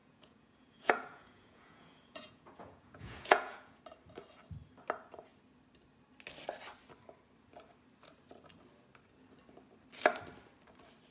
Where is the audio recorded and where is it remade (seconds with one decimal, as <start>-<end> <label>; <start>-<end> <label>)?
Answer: 0.0-3.8 remade; 3.8-11.1 recorded